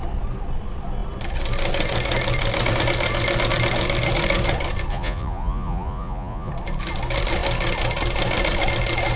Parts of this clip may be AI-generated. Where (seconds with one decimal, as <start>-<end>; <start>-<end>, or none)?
4.9-6.5